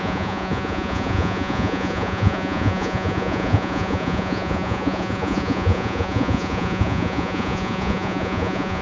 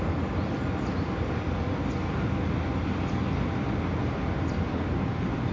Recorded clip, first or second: second